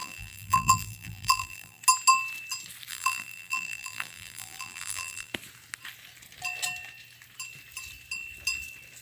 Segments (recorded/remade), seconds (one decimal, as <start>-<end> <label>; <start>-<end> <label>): 0.0-1.8 remade; 1.8-2.9 recorded; 2.9-5.3 remade; 5.3-9.0 recorded